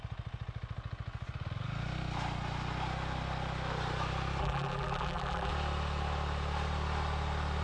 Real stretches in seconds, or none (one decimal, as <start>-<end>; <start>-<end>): 0.0-4.4; 5.5-7.6